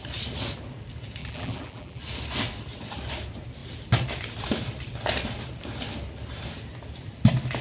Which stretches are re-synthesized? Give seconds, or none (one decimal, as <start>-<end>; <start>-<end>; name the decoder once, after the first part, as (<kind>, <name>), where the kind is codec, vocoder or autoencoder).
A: 1.2-2.0 (vocoder, BigVGAN v2)